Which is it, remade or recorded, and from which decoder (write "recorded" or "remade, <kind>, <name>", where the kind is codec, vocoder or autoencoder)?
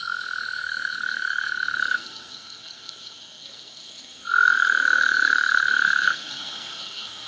remade, codec, SNAC